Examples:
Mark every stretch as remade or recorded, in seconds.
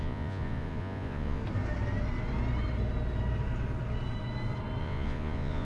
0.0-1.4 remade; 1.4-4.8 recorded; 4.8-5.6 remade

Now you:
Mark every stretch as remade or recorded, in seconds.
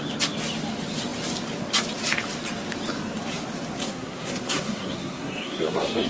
0.0-3.8 recorded; 3.8-6.1 remade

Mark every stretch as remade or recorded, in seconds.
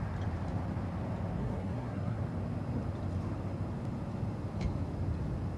0.0-1.4 recorded; 1.4-2.2 remade; 2.2-5.6 recorded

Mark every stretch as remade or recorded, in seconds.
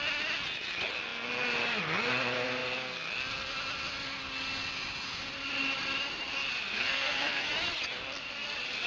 0.0-6.7 recorded; 6.7-7.5 remade; 7.5-8.9 recorded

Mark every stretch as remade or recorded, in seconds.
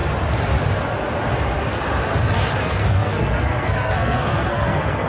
0.0-2.5 recorded; 2.5-5.1 remade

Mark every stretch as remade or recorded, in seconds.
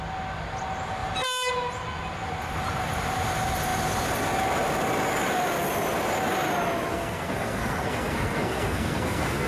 0.0-6.9 recorded; 6.9-9.5 remade